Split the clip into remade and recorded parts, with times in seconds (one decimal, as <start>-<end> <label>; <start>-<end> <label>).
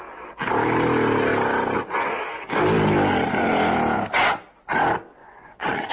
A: 0.0-5.2 recorded; 5.2-5.9 remade